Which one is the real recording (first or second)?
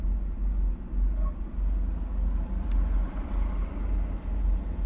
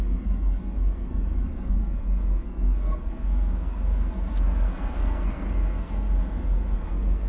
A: first